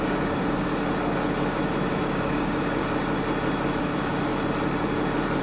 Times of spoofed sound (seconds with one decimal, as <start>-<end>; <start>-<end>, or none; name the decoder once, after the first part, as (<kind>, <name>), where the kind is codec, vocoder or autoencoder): 0.0-0.7 (codec, DAC); 1.9-2.8; 3.8-4.3